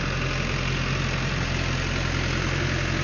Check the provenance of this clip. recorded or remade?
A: recorded